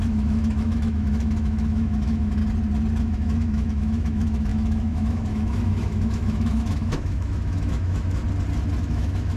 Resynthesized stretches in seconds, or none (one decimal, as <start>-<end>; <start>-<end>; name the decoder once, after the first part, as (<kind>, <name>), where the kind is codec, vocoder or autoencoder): 0.0-2.4 (autoencoder, DAC-VAE); 3.0-8.2; 8.8-9.4